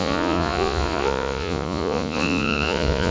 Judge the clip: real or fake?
fake